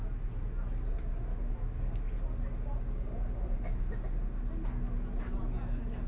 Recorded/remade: recorded